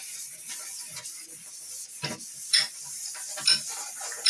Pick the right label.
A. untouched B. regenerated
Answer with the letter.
A